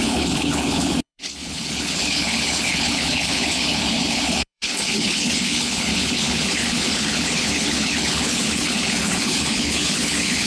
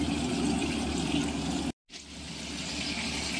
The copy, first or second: first